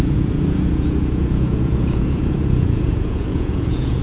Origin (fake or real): fake